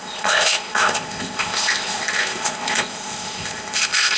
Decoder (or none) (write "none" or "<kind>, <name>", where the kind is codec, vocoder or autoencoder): codec, ZipCodec